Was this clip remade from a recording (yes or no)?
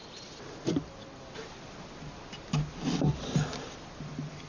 no